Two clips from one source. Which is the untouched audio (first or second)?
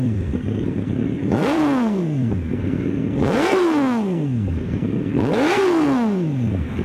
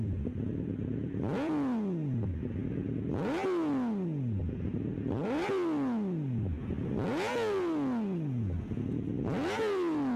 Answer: second